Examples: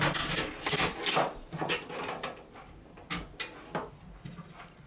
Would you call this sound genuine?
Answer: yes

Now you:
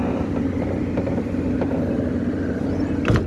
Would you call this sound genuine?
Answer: yes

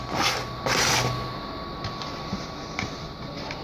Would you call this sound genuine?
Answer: yes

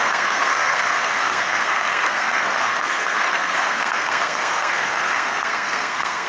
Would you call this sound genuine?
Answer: no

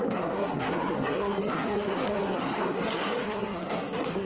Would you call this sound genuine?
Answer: no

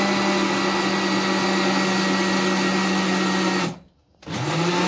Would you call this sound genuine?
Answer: yes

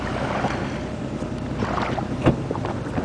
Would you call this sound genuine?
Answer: yes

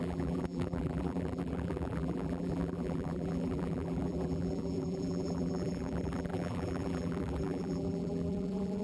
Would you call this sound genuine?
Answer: no